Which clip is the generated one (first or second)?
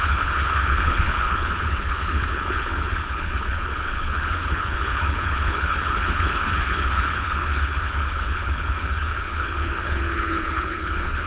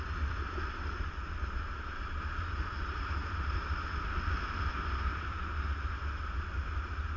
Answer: first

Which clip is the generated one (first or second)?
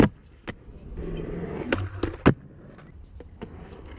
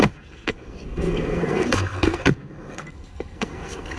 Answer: second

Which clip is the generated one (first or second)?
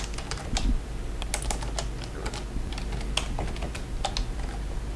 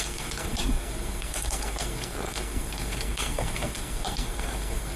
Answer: second